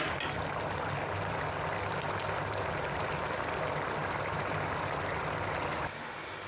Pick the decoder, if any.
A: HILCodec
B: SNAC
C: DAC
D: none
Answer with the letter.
D